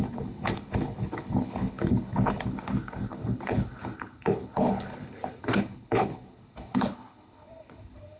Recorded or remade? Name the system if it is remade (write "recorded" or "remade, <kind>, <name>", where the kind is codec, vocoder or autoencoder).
remade, codec, HILCodec